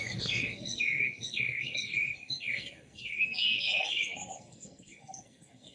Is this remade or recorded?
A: remade